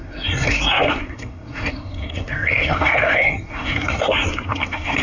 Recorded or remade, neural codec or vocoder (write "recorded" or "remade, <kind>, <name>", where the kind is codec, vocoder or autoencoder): remade, codec, SNAC